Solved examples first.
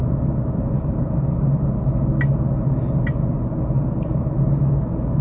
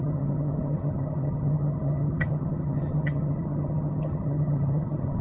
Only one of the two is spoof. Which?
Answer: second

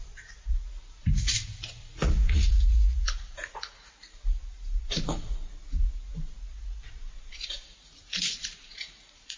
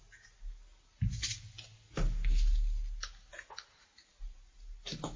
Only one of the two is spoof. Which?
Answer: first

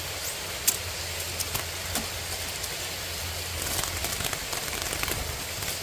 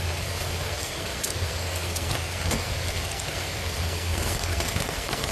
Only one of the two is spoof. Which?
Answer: second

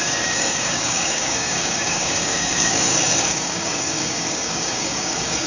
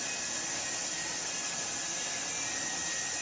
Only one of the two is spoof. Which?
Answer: first